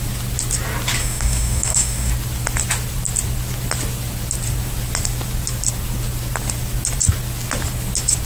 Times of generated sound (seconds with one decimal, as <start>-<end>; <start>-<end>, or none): 1.0-2.1